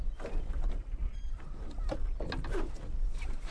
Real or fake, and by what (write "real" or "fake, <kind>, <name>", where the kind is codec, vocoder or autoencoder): real